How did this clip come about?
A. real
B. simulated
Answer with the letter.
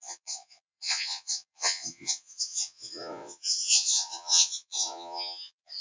B